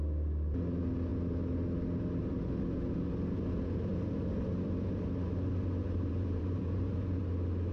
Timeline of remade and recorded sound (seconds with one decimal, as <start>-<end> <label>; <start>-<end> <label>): 0.0-3.9 recorded; 3.9-7.2 remade; 7.2-7.7 recorded